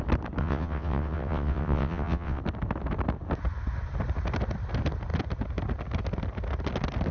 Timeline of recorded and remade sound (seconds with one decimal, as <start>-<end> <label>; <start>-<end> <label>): 0.0-0.4 recorded; 0.4-2.4 remade; 2.4-7.1 recorded